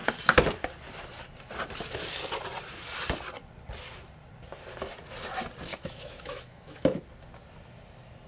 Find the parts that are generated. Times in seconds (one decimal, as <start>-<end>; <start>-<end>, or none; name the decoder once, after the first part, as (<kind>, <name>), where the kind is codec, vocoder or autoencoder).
5.7-7.0 (autoencoder, DAC-VAE)